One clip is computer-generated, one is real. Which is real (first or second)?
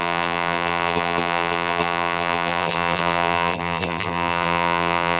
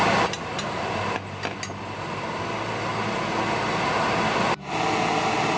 second